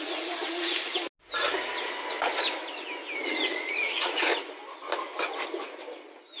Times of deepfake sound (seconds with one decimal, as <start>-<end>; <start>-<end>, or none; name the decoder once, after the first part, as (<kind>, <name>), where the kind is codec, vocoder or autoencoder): 0.0-0.9 (vocoder, Vocos); 3.2-4.3